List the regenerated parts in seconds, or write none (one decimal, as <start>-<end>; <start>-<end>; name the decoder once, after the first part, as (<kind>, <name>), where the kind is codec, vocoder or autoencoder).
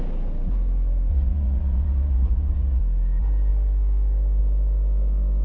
1.1-2.8 (vocoder, Vocos)